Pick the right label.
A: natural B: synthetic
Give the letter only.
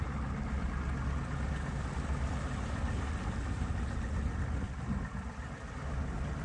A